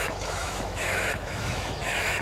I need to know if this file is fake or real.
fake